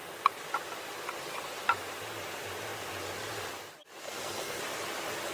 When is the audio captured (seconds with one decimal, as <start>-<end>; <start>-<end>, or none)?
0.0-4.0; 4.6-5.3